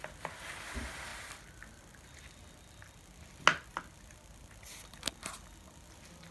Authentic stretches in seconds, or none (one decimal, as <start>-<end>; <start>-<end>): 0.0-6.3